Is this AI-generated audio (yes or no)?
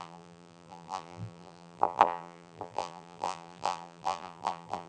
yes